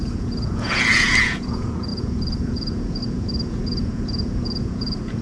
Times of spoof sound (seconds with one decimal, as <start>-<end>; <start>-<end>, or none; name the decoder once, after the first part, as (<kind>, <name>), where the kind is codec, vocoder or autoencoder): 0.0-5.2 (vocoder, Vocos)